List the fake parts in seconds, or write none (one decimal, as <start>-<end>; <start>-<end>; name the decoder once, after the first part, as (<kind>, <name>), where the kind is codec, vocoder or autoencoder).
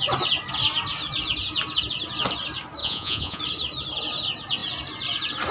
2.8-3.4 (vocoder, Vocos)